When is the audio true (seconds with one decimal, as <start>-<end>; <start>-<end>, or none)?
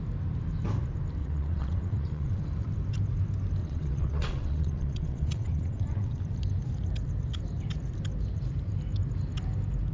0.0-1.2; 2.4-3.6; 6.2-9.9